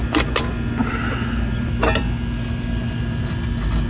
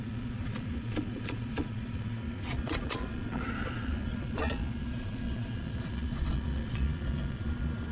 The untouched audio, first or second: first